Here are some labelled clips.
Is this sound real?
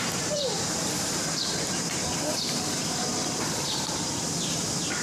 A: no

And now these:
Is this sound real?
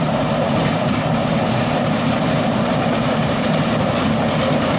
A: no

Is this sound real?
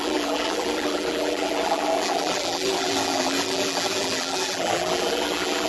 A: no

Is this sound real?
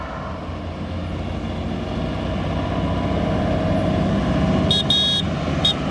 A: yes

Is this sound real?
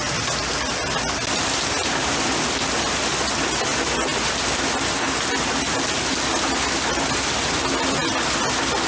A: yes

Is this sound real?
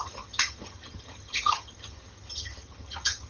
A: no